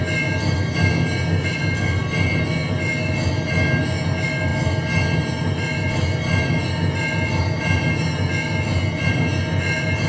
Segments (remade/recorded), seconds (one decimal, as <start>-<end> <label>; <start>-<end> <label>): 0.0-10.1 recorded